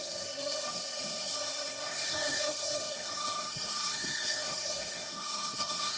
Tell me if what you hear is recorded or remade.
remade